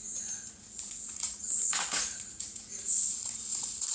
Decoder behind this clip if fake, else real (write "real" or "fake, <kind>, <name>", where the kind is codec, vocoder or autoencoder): fake, vocoder, Vocos